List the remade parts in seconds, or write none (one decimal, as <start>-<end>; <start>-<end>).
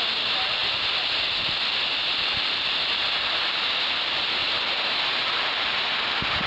4.4-5.2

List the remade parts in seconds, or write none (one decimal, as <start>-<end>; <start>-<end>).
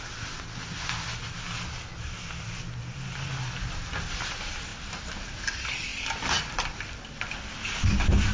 5.9-7.0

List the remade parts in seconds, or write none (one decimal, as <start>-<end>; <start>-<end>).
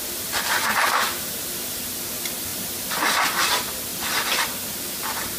none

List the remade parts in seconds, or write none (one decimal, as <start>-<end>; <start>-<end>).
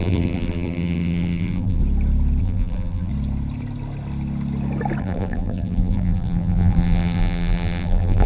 0.0-1.8; 2.4-3.1; 5.0-8.3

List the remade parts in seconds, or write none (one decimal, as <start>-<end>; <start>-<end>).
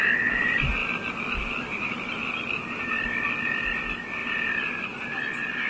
none